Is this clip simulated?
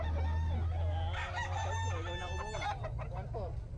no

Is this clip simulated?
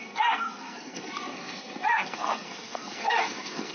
yes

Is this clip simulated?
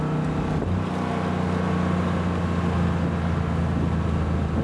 no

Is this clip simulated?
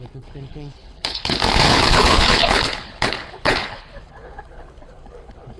yes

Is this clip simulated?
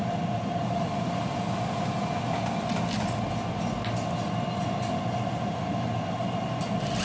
no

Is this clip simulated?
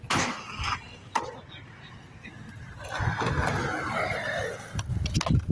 no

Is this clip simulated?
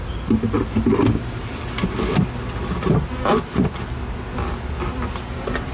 no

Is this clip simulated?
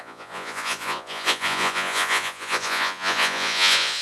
yes